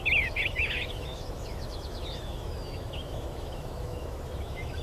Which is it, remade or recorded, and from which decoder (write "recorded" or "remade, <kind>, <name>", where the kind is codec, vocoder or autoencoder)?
remade, autoencoder, DAC-VAE